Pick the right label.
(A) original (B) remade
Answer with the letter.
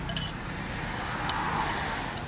A